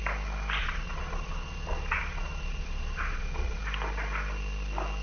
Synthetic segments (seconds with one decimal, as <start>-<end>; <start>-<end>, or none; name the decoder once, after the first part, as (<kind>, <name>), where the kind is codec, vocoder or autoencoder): 0.6-3.6 (vocoder, Vocos)